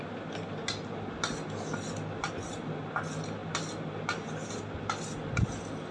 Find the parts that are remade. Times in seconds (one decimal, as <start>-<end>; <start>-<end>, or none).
none